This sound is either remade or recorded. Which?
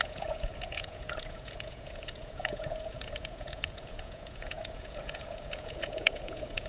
remade